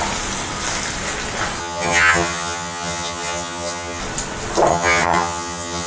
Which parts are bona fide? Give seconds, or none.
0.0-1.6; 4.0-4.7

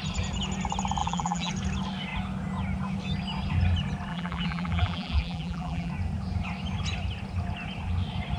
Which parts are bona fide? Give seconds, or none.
0.0-1.0; 1.5-4.1; 5.9-8.4

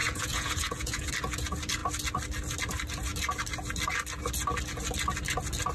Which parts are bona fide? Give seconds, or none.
1.1-5.7

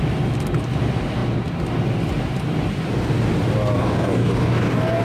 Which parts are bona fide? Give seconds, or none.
0.0-3.8